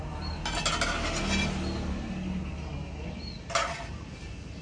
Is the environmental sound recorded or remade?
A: recorded